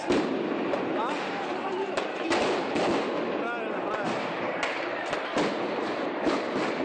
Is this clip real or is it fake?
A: real